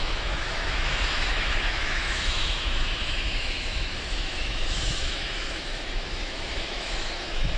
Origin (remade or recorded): remade